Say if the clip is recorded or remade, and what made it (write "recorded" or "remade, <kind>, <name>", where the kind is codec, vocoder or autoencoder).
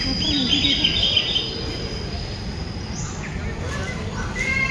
recorded